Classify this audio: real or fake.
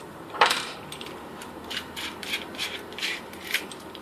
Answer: fake